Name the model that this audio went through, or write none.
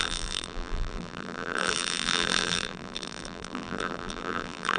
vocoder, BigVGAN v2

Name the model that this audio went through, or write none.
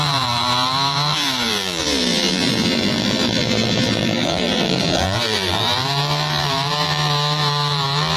vocoder, BigVGAN v2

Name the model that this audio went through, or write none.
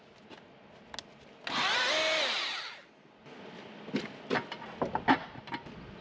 none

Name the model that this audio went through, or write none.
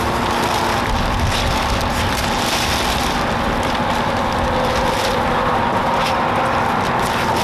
none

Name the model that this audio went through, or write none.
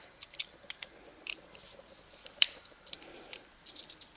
vocoder, BigVGAN v2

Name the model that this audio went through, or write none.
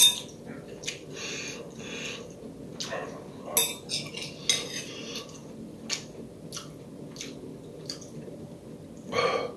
none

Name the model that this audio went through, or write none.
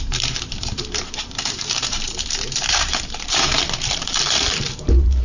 vocoder, BigVGAN v2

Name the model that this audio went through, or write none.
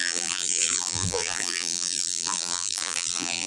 vocoder, BigVGAN v2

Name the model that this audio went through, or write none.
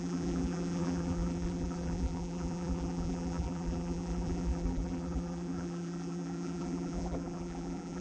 vocoder, BigVGAN v2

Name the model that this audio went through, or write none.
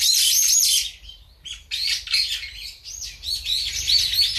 none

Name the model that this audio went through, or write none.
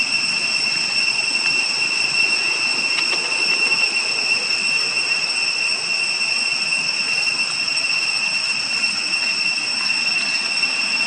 none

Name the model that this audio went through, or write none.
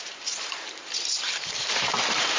vocoder, BigVGAN v2